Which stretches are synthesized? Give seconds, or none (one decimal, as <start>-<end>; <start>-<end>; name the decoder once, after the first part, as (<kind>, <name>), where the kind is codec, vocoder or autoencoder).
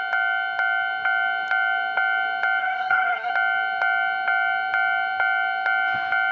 2.6-3.3 (codec, SNAC)